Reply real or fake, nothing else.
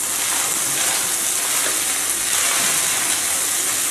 real